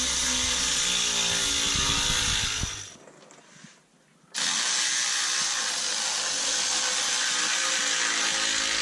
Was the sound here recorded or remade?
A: recorded